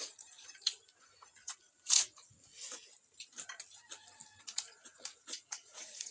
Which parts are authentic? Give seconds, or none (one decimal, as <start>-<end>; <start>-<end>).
2.5-4.4